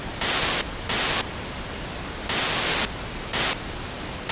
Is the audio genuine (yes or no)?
yes